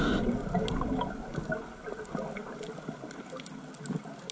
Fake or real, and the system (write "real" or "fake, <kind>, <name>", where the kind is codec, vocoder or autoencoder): real